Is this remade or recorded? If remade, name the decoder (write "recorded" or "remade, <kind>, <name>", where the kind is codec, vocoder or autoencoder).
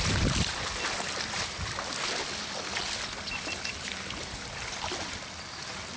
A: recorded